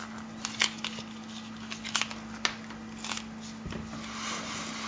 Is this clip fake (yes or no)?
no